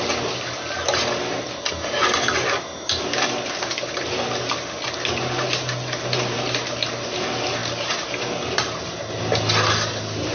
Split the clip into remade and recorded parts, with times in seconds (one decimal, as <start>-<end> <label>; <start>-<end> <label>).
0.0-10.3 recorded